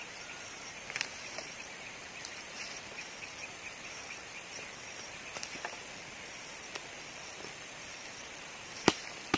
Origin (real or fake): fake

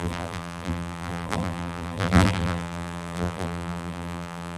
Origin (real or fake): fake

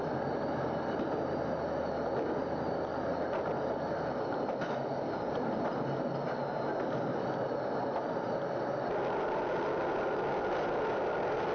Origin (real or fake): real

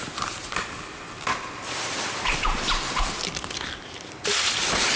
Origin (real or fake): fake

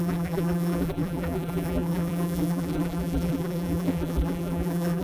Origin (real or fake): fake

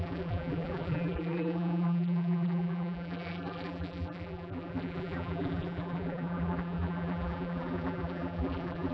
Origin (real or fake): fake